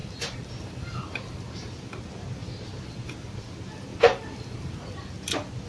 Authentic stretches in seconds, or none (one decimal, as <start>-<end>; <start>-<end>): 1.5-3.9; 5.1-5.7